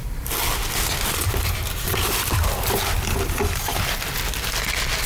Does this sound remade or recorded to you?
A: recorded